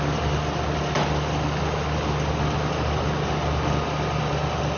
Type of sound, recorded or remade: recorded